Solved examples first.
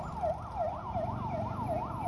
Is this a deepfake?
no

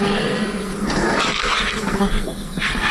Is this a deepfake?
yes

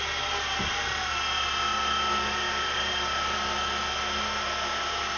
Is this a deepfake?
no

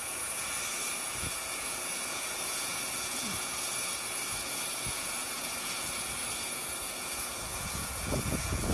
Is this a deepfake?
yes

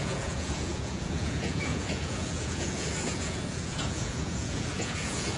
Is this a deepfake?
yes